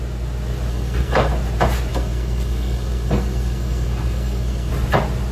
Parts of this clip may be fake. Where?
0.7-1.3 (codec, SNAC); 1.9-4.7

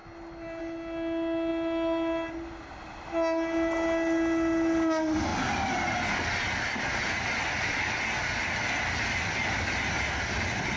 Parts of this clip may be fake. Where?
none

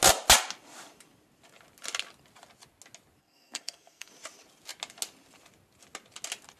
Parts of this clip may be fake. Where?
3.2-4.1 (codec, SNAC)

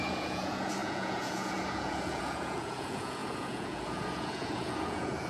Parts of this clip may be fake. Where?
0.0-5.3 (vocoder, Vocos)

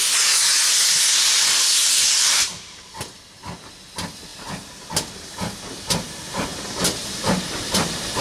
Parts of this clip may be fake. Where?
1.8-3.0 (vocoder, BigVGAN v2); 4.3-4.9; 7.0-8.2